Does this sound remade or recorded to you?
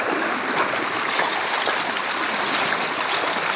recorded